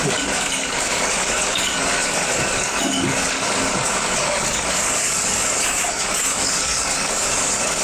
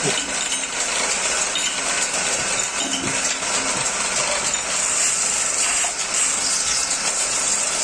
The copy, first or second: first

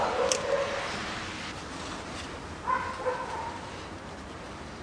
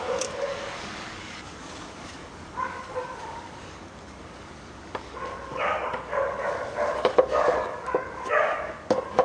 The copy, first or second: second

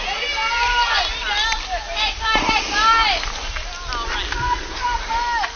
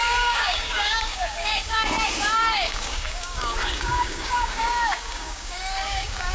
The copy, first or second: second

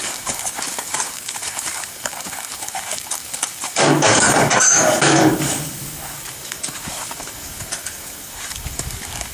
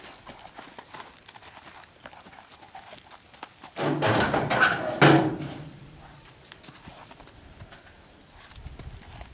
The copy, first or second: first